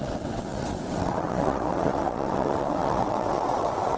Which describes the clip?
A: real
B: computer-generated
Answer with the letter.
B